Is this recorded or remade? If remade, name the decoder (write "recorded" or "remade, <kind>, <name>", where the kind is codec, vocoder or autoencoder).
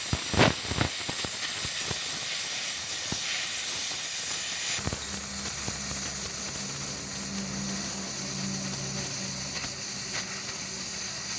recorded